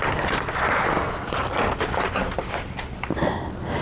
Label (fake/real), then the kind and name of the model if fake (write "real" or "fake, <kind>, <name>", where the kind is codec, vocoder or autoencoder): real